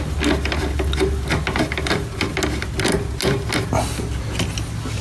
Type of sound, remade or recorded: recorded